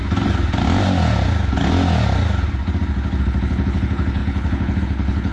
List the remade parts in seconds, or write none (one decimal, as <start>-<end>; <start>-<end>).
3.2-5.3